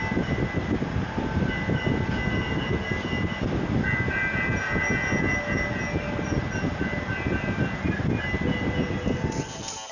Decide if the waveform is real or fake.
real